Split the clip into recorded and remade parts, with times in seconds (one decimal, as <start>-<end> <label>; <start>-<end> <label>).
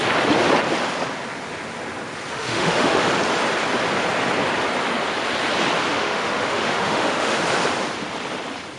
0.0-2.3 recorded; 2.3-3.1 remade; 3.1-5.9 recorded; 5.9-7.4 remade; 7.4-8.8 recorded